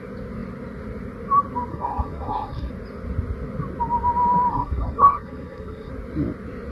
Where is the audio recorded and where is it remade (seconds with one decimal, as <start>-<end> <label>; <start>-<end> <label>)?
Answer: 0.0-1.7 recorded; 1.7-2.7 remade; 2.7-4.5 recorded; 4.5-5.9 remade; 5.9-6.7 recorded

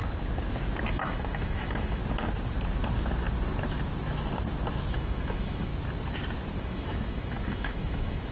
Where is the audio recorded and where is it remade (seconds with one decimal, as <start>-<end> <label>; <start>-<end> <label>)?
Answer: 0.0-0.9 recorded; 0.9-2.0 remade; 2.0-4.9 recorded; 4.9-5.7 remade; 5.7-6.6 recorded; 6.6-8.3 remade

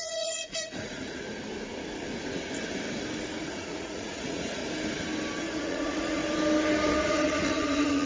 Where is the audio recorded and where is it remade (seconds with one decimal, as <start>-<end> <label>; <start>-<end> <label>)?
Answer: 0.0-1.2 remade; 1.2-3.4 recorded; 3.4-4.6 remade; 4.6-5.4 recorded; 5.4-6.2 remade; 6.2-7.1 recorded; 7.1-8.1 remade

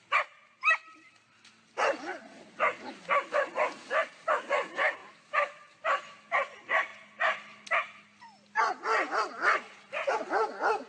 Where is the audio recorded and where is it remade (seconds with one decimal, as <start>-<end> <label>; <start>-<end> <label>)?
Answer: 0.0-5.0 recorded; 5.0-5.8 remade; 5.8-6.9 recorded; 6.9-8.0 remade; 8.0-10.9 recorded